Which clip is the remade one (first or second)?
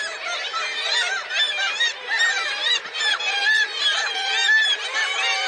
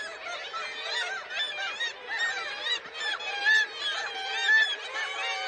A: first